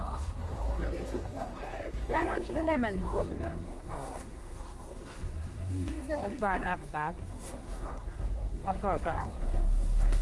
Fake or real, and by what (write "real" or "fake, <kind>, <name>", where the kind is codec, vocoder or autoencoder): fake, codec, SNAC